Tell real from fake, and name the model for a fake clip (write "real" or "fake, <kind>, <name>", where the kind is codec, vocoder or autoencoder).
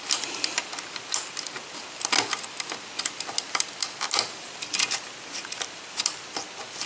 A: real